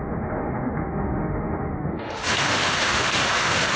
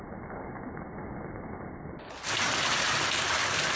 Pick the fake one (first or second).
first